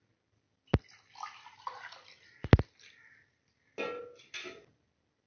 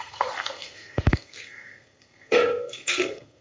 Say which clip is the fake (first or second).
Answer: second